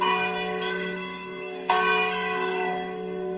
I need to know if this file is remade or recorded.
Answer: remade